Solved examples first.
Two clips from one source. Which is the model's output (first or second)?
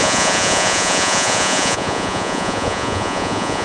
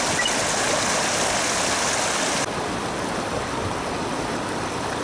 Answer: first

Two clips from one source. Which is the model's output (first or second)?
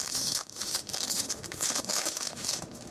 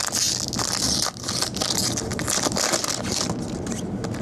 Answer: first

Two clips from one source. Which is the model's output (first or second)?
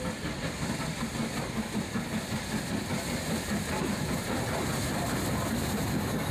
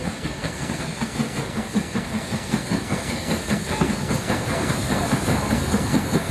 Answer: second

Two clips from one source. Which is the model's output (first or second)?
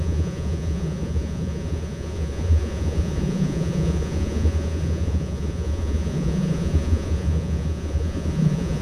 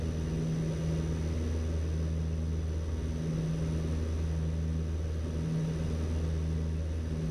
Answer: first